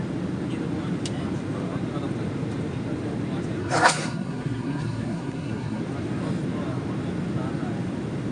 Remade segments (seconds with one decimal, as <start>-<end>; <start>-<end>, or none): 3.6-5.8